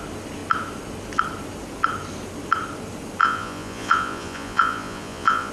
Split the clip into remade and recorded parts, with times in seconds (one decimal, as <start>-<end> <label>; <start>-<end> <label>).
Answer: 0.0-3.2 recorded; 3.2-5.5 remade